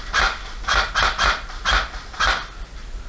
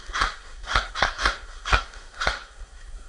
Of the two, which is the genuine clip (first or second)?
first